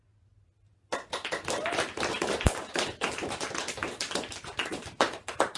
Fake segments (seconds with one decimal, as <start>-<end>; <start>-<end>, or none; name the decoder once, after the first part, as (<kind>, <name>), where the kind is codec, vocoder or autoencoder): none